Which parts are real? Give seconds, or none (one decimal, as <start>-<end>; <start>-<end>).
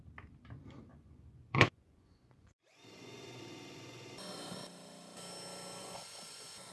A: 0.0-0.9; 4.3-5.8